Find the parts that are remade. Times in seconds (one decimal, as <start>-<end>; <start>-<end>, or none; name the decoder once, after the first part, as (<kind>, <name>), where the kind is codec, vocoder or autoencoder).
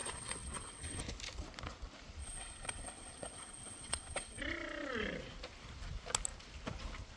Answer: 0.0-1.0 (vocoder, WaveNeXt); 2.2-4.4